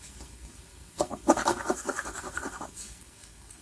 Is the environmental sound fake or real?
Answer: fake